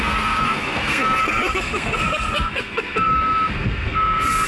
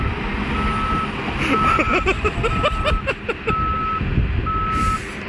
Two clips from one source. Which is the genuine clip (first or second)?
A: second